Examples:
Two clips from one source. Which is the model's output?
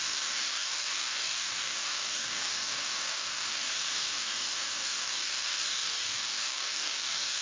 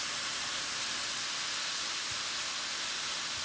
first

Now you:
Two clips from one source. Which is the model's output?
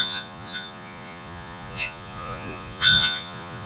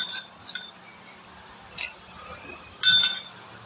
first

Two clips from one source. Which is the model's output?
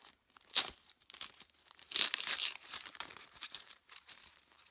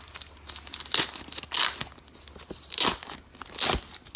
first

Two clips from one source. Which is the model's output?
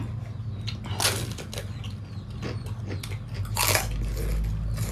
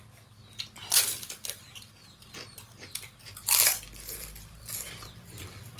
second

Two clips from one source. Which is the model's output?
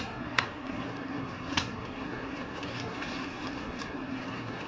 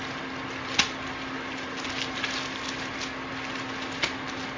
first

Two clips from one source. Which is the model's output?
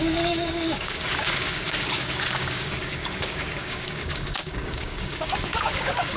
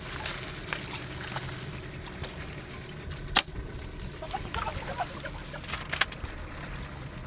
first